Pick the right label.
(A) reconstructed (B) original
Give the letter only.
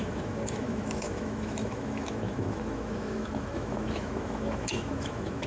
A